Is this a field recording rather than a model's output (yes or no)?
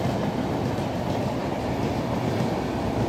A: yes